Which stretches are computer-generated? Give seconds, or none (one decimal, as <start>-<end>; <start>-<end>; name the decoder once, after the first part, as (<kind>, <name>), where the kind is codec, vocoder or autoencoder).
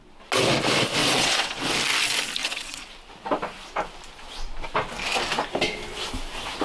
1.0-1.7 (vocoder, WaveNeXt); 2.4-2.9